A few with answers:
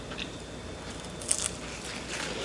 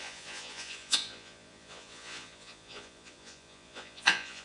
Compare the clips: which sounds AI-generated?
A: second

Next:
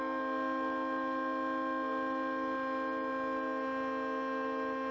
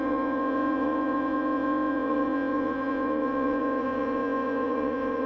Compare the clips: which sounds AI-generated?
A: second